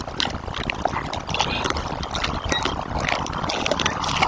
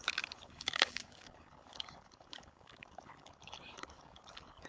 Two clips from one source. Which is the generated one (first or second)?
second